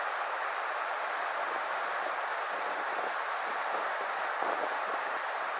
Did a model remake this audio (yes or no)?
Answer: no